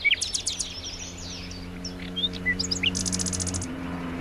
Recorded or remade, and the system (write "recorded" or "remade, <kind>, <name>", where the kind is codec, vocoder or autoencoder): recorded